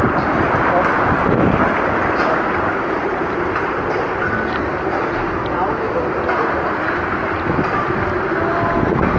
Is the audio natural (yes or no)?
yes